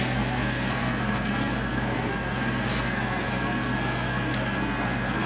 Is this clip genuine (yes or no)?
no